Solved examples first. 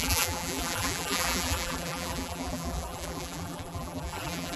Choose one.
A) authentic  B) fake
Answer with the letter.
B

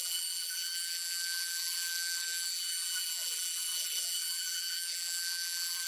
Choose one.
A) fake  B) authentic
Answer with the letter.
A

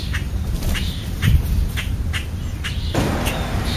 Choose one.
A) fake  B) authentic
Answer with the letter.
A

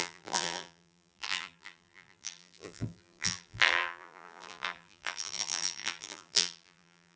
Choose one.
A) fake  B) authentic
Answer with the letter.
A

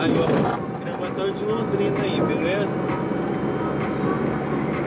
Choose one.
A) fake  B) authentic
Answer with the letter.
B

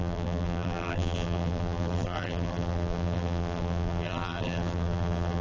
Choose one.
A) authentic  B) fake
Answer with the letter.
B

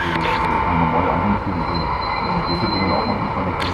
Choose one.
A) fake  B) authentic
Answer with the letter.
B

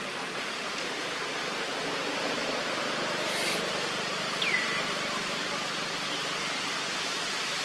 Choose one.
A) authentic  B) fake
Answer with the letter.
B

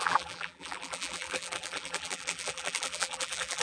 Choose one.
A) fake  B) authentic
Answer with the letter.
A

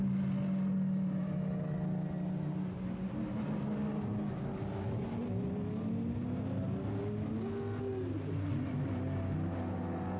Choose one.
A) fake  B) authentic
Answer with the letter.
B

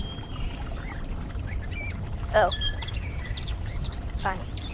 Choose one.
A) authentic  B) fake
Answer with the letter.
B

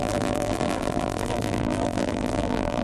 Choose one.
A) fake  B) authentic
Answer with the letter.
A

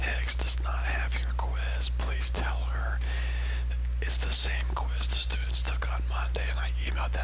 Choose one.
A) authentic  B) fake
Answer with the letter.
A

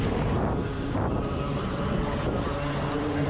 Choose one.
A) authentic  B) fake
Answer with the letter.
A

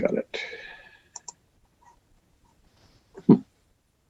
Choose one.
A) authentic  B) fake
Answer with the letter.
B